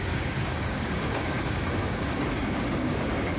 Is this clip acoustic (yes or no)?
no